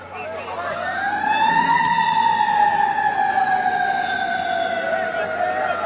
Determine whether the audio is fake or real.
real